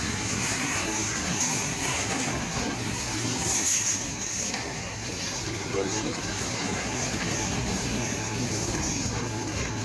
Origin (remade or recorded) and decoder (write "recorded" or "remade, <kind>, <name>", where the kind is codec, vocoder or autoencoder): remade, codec, SNAC